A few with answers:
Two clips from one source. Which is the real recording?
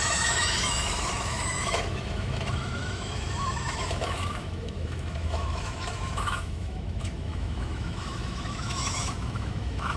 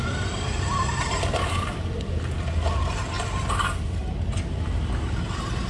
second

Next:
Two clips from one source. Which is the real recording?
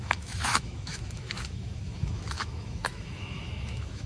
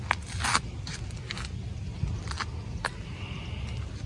second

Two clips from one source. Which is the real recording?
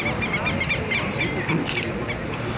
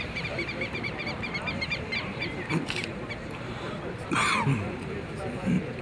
first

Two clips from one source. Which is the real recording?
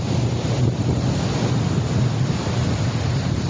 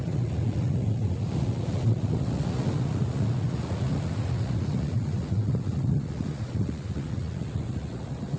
first